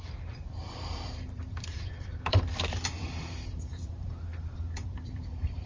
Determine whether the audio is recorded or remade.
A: remade